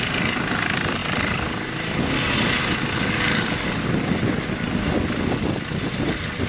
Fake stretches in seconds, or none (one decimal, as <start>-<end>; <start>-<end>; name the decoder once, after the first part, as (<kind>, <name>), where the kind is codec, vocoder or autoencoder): none